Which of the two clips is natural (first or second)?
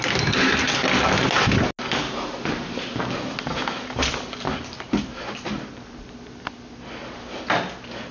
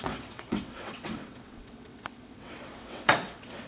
first